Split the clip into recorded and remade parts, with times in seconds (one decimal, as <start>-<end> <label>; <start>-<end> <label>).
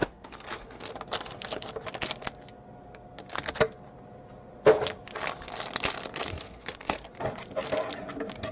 0.0-0.9 remade; 0.9-6.3 recorded; 6.3-7.1 remade; 7.1-8.5 recorded